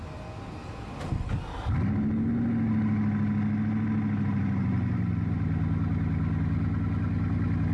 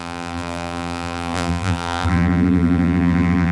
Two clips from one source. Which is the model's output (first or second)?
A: second